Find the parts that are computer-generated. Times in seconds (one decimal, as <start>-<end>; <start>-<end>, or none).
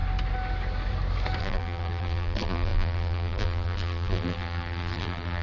1.4-5.4